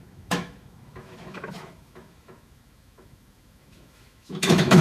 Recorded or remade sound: remade